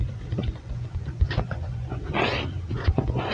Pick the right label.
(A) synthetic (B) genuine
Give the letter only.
A